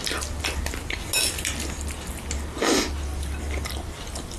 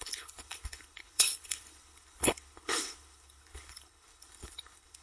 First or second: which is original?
first